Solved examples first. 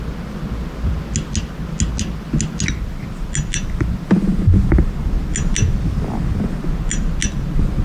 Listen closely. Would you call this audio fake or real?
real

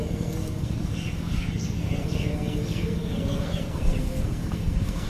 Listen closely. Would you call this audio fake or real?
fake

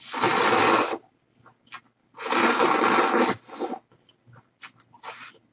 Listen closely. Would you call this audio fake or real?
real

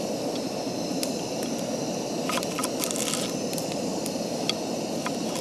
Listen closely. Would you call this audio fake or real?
real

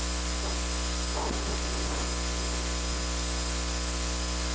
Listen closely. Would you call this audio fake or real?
real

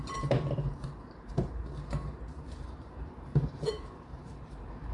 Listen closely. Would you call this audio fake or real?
fake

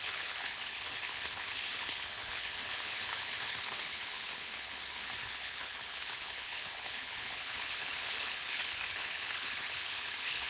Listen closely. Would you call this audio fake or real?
fake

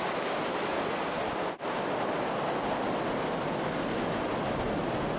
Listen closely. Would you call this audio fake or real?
real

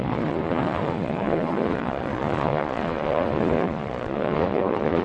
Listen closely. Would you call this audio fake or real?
fake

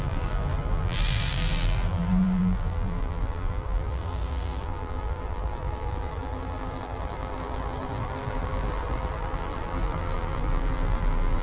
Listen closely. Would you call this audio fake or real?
fake